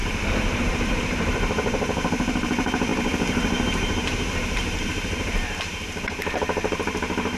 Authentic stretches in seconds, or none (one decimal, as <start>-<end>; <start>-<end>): 0.0-0.6